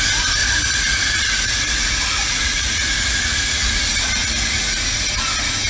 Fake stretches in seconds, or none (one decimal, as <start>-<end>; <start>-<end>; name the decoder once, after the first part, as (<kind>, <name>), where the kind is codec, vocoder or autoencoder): 0.4-3.8 (vocoder, Vocos); 4.2-4.8